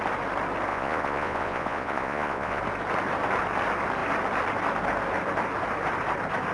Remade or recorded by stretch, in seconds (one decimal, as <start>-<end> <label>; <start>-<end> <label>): 0.0-0.7 recorded; 0.7-2.6 remade; 2.6-6.5 recorded